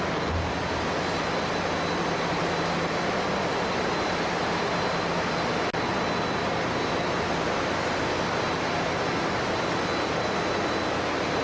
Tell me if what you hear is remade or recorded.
recorded